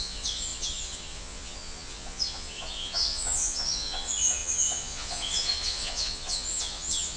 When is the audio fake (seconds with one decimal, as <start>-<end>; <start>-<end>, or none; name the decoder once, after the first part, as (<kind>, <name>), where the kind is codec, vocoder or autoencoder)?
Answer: 0.0-7.2 (vocoder, Vocos)